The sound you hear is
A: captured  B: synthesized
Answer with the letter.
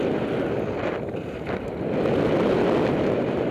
A